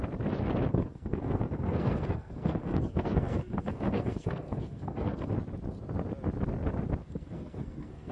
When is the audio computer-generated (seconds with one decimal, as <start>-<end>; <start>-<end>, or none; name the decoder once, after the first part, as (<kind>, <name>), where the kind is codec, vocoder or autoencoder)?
0.7-5.3 (codec, SNAC); 7.0-8.1

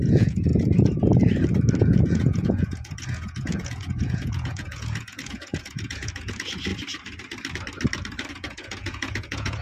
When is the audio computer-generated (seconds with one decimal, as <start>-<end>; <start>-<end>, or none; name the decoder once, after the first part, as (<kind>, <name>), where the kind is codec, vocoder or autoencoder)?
0.0-0.5 (vocoder, Vocos); 1.8-6.7; 8.3-9.6

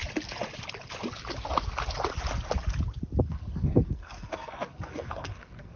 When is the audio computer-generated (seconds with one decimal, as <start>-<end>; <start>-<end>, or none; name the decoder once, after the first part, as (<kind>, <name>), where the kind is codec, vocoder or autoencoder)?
3.2-5.8 (codec, SNAC)

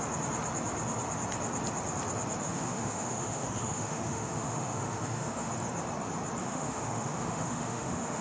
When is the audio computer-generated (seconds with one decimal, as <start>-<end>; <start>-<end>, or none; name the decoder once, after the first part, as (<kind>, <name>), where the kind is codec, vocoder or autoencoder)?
2.4-5.5 (autoencoder, DAC-VAE); 6.4-8.2

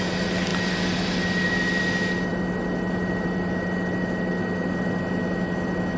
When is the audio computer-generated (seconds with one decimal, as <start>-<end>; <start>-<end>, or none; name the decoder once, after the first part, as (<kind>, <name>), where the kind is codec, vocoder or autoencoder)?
0.5-1.8 (vocoder, BigVGAN v2); 2.3-5.2

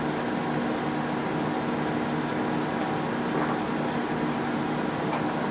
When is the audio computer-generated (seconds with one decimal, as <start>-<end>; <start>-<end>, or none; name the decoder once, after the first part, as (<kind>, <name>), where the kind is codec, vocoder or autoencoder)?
none